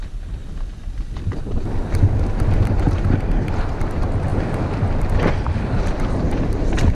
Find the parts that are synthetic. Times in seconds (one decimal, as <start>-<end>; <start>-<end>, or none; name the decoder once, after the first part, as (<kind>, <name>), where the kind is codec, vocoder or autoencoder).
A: none